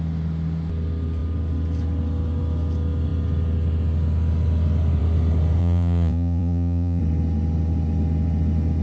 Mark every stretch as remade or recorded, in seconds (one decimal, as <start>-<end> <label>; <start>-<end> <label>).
0.0-5.6 recorded; 5.6-7.0 remade; 7.0-8.8 recorded